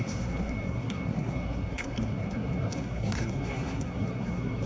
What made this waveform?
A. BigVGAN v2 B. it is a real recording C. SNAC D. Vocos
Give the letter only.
C